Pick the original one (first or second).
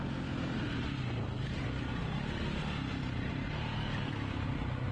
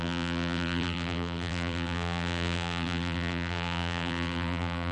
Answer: first